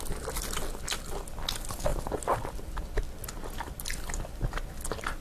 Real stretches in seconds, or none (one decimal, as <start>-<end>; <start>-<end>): 0.0-5.2